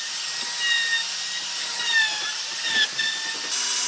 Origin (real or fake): real